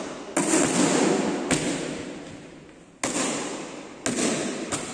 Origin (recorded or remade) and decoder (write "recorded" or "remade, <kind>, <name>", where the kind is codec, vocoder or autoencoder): recorded